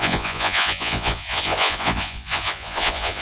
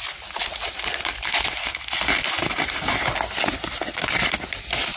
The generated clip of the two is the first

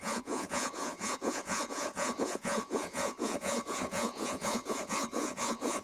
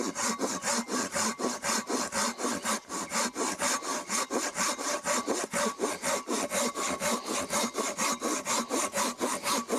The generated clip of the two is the first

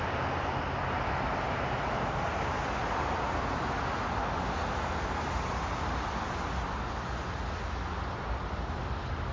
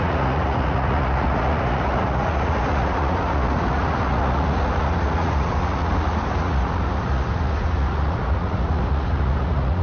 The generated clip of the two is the second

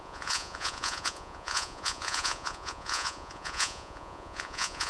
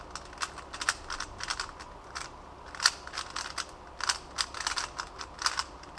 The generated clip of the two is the first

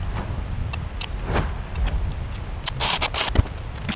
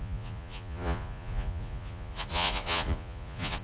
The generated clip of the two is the second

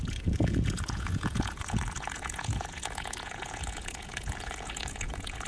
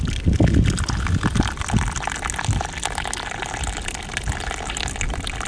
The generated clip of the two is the first